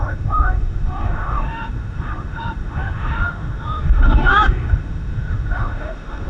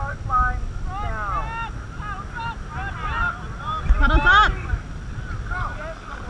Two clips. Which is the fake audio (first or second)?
first